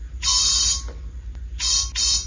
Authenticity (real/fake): real